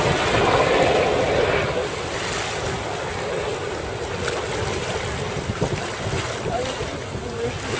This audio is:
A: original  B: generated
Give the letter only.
A